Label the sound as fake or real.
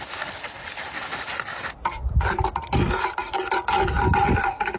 real